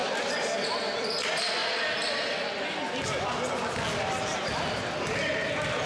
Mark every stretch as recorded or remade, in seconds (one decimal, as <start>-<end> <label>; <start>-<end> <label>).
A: 0.0-5.9 recorded